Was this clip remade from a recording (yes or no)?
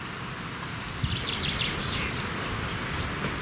no